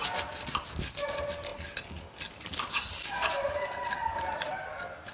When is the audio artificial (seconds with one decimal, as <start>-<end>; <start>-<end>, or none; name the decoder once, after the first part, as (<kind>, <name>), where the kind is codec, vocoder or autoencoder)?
none